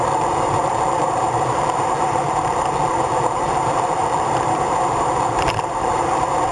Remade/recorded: remade